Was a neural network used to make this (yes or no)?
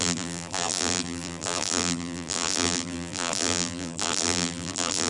yes